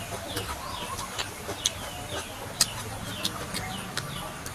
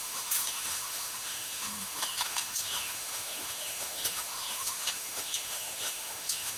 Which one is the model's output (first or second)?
second